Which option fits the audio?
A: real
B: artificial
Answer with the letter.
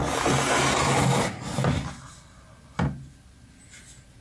A